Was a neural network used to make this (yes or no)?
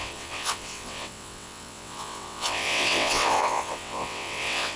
yes